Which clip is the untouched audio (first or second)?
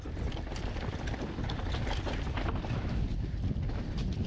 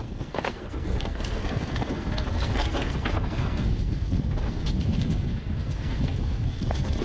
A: first